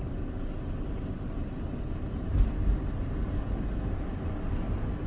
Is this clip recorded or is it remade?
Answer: recorded